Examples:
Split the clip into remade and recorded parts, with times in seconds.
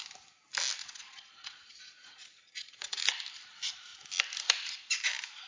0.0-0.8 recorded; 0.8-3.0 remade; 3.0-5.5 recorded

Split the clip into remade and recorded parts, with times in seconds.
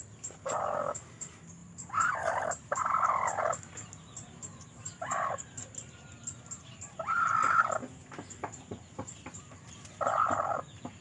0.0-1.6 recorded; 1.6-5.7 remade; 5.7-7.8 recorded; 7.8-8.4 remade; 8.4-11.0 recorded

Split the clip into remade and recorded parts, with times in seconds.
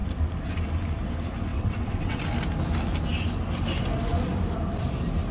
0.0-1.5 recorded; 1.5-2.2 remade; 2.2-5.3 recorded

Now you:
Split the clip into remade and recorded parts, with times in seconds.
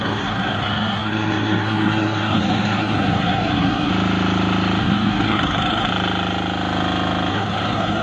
0.0-3.9 remade; 3.9-4.8 recorded; 4.8-5.9 remade; 5.9-7.3 recorded; 7.3-8.0 remade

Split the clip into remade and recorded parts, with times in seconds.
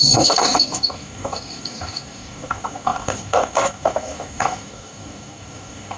0.0-6.0 remade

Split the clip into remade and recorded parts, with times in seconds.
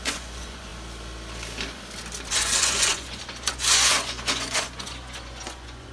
0.0-0.7 remade; 0.7-2.3 recorded; 2.3-5.9 remade